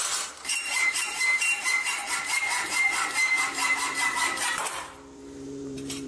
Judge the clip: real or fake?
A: fake